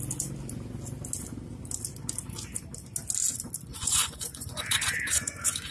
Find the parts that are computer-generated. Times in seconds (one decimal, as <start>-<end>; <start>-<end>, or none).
3.7-5.7

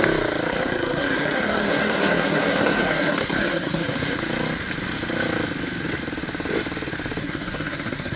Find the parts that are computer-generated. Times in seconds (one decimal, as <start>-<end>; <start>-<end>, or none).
0.5-4.2; 7.2-8.2

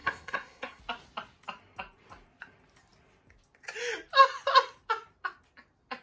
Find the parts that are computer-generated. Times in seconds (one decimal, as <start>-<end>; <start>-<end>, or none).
0.0-0.8

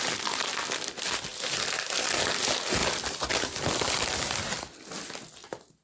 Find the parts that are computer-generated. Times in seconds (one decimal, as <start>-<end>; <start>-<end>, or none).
1.3-2.4; 2.8-3.3

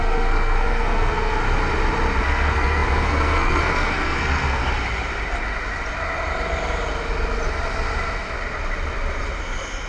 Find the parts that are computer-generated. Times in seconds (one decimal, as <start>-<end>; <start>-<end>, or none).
0.0-1.4; 2.2-4.6

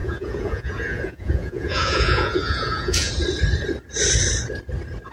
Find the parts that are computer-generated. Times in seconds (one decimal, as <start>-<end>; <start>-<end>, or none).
0.0-3.1